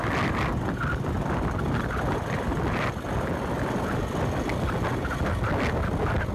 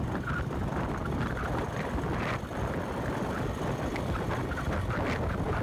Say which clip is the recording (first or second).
first